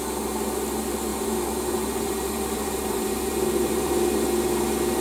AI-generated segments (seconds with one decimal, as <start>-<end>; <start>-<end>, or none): 1.1-3.9